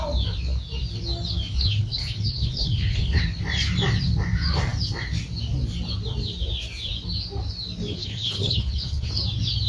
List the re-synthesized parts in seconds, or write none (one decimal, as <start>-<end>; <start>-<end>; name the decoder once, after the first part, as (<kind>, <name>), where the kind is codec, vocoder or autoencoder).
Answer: 1.5-3.2 (codec, HILCodec); 7.9-9.1